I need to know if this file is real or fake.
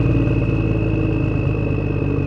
real